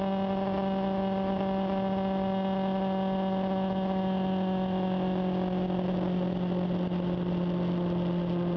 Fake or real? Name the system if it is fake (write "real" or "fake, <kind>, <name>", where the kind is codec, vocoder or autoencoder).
real